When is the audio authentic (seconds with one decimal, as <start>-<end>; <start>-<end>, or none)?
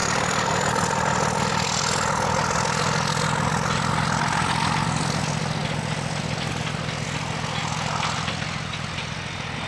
0.0-9.7